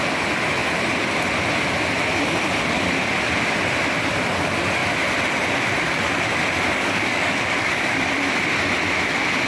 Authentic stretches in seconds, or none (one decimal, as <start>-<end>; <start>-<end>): 0.0-6.7; 8.1-9.5

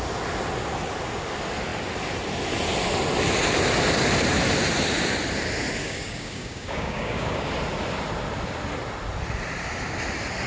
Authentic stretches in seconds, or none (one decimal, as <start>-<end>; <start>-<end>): 0.0-5.8; 7.5-10.5

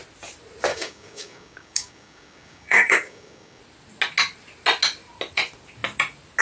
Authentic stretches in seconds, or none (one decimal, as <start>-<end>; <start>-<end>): 0.0-0.7; 3.6-6.4

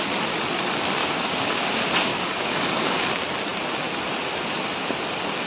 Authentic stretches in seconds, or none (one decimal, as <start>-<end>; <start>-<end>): 0.0-1.0; 1.7-2.1; 3.0-5.5